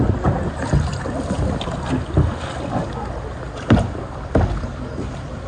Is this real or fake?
real